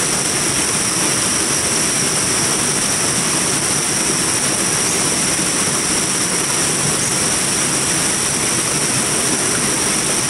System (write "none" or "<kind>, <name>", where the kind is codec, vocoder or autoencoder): none